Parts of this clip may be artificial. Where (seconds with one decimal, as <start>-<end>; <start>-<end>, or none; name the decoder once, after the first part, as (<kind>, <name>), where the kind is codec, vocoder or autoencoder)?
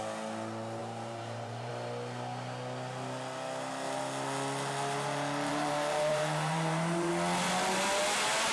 0.8-1.7 (vocoder, BigVGAN v2); 5.5-7.1